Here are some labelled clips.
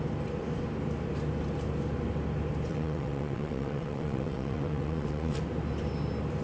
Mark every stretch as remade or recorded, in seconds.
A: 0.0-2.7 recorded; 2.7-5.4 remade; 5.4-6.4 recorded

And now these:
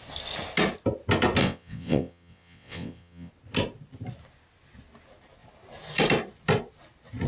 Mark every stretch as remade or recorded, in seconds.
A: 0.0-1.4 recorded; 1.4-3.3 remade; 3.3-7.3 recorded